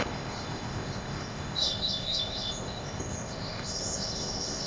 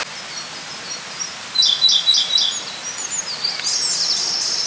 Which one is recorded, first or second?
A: second